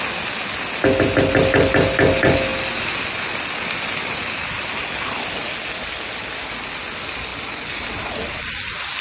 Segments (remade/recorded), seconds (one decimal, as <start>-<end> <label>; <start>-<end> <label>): 0.0-9.0 recorded